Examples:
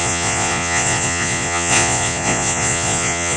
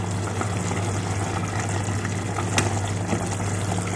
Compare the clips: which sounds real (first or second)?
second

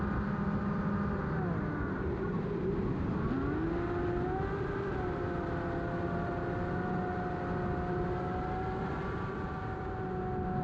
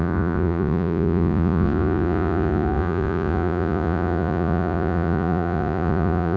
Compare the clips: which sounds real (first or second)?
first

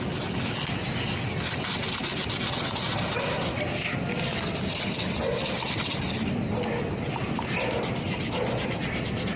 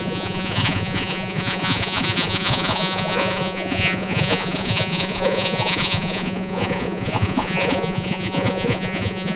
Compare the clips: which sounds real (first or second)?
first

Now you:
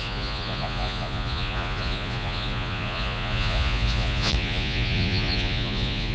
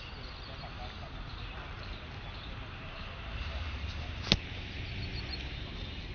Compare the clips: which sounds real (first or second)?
second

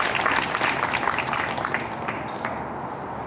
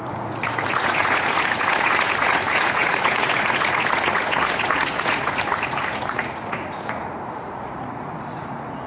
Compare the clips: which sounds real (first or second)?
first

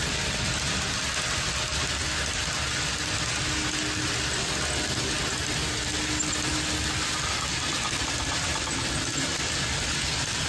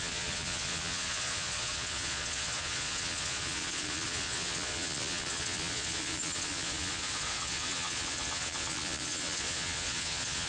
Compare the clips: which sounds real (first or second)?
first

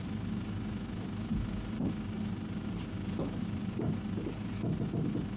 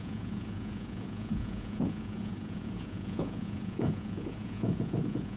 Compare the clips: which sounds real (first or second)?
first